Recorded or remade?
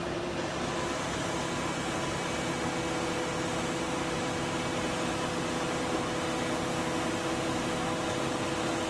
recorded